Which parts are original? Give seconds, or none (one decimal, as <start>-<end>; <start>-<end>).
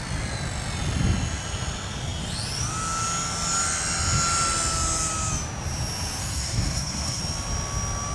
0.0-6.2; 7.2-8.1